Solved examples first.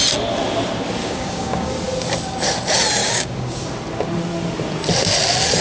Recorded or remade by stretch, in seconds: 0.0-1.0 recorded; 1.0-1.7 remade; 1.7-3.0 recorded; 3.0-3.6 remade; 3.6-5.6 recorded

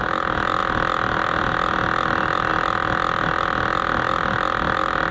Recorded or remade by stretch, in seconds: 0.0-5.1 recorded

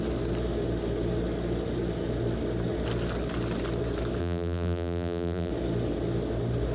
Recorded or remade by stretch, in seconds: 0.0-4.2 recorded; 4.2-5.5 remade; 5.5-6.7 recorded

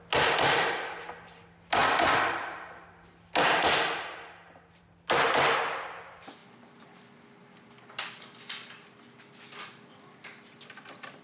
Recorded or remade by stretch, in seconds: 0.0-11.2 recorded

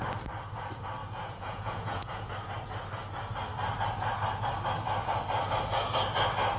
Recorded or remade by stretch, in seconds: 0.0-1.0 recorded; 1.0-2.3 remade; 2.3-6.6 recorded

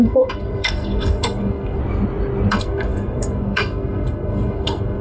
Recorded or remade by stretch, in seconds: 0.0-1.8 remade; 1.8-2.5 recorded; 2.5-5.0 remade

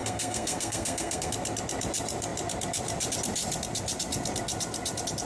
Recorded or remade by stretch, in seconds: 0.0-1.3 remade; 1.3-5.3 recorded